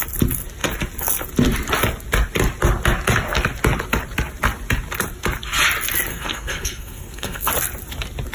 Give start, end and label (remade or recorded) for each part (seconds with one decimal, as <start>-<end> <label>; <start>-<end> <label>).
0.0-6.1 recorded; 6.1-7.5 remade; 7.5-8.3 recorded